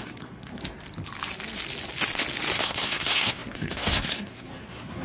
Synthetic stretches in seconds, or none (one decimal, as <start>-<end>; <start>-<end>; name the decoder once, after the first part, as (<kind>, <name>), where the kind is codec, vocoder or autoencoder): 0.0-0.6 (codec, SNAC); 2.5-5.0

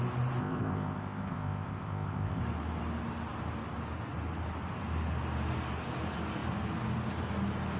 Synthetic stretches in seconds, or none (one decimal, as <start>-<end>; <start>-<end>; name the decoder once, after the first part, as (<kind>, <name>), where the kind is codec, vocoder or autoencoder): 0.4-2.4 (codec, ZipCodec)

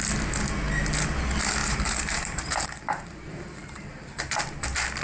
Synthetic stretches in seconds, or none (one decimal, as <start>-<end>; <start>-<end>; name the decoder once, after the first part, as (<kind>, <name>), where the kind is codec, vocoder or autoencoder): 1.6-4.2 (vocoder, BigVGAN v2)

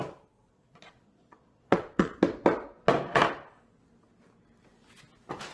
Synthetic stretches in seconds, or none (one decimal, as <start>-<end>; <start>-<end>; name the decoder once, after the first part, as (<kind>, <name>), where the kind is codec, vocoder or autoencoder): 0.5-2.2 (vocoder, Vocos)